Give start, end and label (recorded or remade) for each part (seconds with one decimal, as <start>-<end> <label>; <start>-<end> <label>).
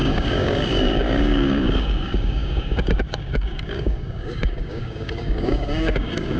0.0-6.4 remade